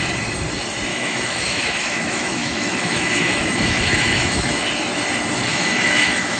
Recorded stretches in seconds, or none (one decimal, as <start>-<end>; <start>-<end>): 0.0-0.9; 4.7-5.5